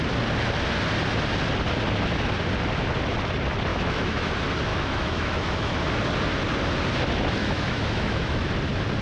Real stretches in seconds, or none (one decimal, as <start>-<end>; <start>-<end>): 0.0-3.7; 4.3-4.7; 5.7-7.4; 8.5-9.0